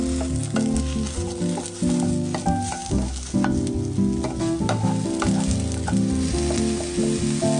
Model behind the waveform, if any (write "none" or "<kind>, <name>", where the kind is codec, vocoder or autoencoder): none